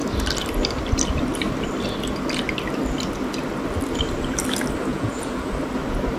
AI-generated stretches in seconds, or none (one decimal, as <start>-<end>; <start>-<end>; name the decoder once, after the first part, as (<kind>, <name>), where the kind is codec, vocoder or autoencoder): 4.9-5.5 (vocoder, Vocos)